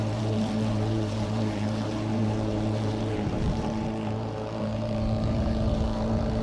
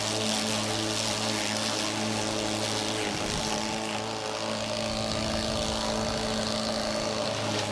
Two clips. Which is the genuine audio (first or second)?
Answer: second